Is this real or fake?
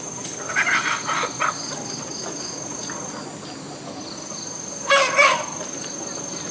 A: real